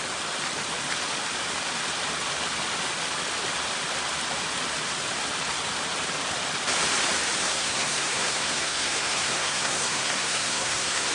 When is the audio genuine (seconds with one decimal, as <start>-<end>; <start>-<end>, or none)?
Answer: 0.0-7.4